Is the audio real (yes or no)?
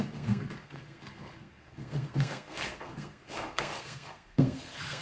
no